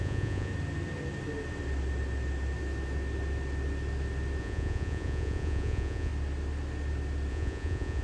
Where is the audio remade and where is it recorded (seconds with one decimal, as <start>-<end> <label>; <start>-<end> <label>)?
0.0-0.5 remade; 0.5-4.4 recorded; 4.4-6.1 remade; 6.1-7.3 recorded; 7.3-8.0 remade